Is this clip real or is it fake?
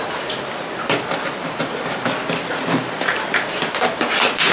real